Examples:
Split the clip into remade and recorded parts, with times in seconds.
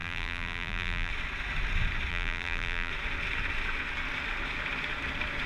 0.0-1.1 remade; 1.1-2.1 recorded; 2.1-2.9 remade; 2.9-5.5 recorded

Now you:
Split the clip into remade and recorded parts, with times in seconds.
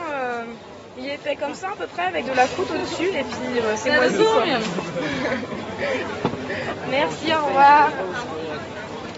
0.0-2.8 recorded; 2.8-6.8 remade; 6.8-9.2 recorded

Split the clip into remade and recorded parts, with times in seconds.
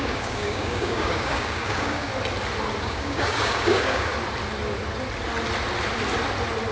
0.0-2.1 remade; 2.1-2.8 recorded; 2.8-4.1 remade; 4.1-6.7 recorded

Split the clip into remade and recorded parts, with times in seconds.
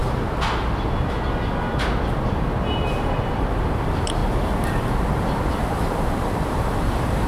0.0-2.8 recorded; 2.8-4.2 remade; 4.2-5.5 recorded; 5.5-7.3 remade